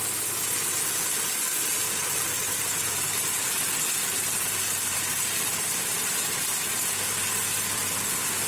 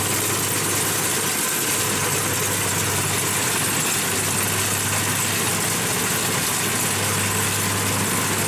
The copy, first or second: first